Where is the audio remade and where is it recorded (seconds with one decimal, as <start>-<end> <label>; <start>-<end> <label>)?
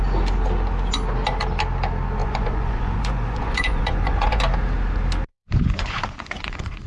0.0-2.2 recorded; 2.2-4.4 remade; 4.4-5.3 recorded; 5.3-6.9 remade